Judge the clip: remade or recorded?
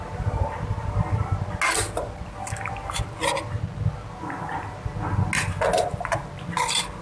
recorded